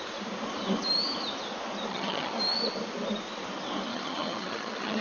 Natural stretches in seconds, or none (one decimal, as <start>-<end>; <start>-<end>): 0.0-1.9; 2.4-3.9